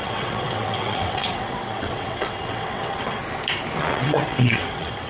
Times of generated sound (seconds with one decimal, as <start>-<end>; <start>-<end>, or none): 0.0-3.2; 3.8-5.1